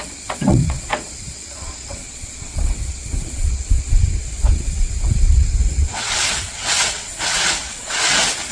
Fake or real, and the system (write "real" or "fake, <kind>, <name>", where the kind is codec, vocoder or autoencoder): fake, vocoder, WaveNeXt